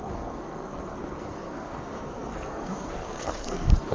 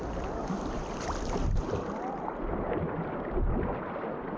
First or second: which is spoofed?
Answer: first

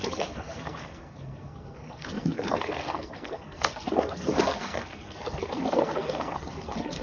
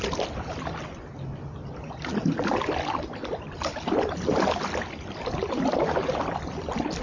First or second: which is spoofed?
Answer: first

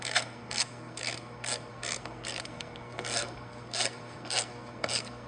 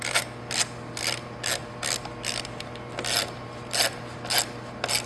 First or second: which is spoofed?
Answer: first